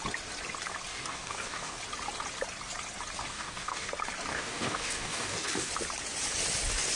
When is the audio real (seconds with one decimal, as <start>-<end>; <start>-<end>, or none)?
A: 0.0-0.9; 1.8-3.2; 3.9-4.3; 5.7-7.0